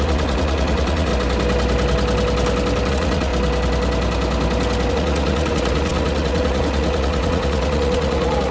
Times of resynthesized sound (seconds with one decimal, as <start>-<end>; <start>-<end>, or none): 0.0-1.1; 2.9-3.3; 4.9-8.5